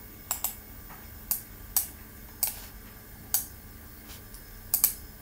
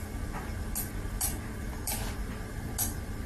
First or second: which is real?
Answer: first